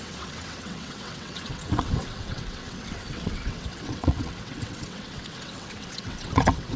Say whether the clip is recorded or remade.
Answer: remade